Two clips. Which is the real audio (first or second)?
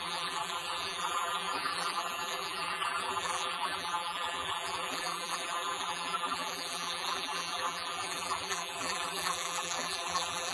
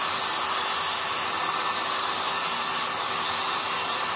second